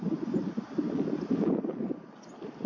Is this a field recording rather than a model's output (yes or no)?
yes